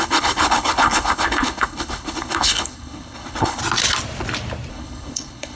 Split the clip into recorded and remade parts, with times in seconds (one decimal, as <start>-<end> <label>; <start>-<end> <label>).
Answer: 0.0-3.6 remade; 3.6-4.7 recorded; 4.7-5.6 remade

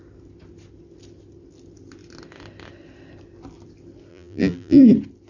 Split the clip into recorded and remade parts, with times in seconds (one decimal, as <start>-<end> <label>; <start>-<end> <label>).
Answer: 0.0-4.1 recorded; 4.1-4.8 remade; 4.8-5.3 recorded

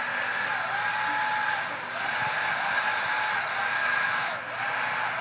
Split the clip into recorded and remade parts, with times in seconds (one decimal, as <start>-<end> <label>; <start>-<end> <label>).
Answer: 0.0-3.8 recorded; 3.8-4.4 remade; 4.4-5.2 recorded